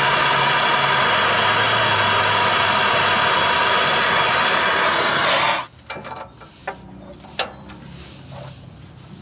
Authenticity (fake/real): real